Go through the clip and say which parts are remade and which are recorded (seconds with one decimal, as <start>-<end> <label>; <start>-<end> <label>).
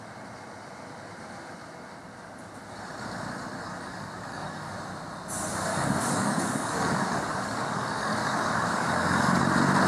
0.0-3.6 recorded; 3.6-4.7 remade; 4.7-5.7 recorded; 5.7-9.4 remade; 9.4-9.9 recorded